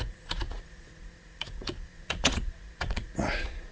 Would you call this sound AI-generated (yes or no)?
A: yes